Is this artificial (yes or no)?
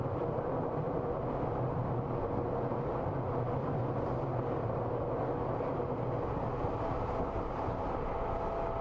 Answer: no